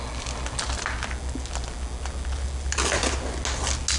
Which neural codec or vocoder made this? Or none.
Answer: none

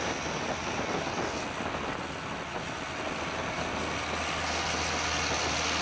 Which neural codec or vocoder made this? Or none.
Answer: none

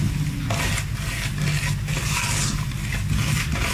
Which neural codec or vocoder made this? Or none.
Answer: none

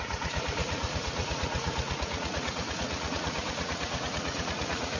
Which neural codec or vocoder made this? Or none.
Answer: vocoder, Vocos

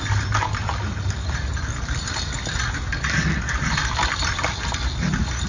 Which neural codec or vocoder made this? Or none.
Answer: none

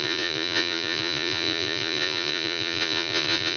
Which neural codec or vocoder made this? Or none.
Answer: vocoder, Vocos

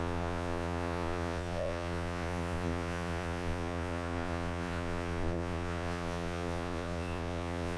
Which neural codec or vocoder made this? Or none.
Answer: vocoder, Vocos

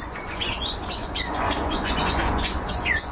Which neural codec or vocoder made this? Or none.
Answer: vocoder, Vocos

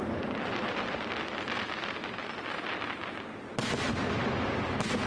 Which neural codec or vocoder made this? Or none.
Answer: none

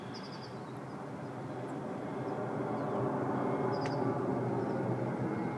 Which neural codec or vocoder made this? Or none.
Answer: none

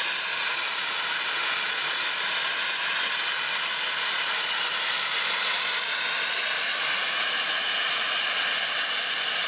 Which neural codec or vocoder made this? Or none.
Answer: none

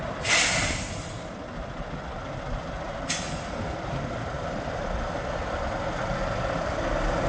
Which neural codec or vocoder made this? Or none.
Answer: none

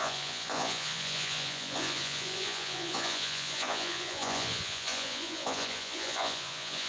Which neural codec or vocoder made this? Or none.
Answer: vocoder, Vocos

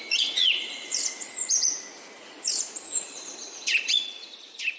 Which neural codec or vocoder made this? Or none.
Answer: vocoder, Vocos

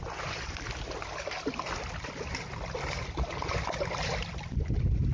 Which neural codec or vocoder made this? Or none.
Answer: none